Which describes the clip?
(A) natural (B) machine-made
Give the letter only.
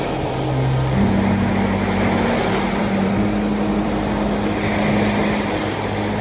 B